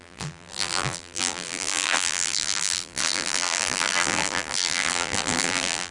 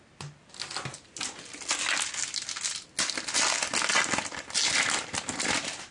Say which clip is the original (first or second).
second